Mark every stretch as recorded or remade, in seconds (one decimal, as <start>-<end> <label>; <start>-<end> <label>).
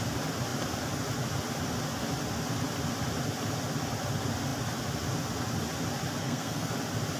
0.0-6.2 recorded; 6.2-6.7 remade; 6.7-7.2 recorded